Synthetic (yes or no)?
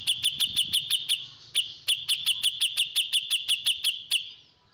no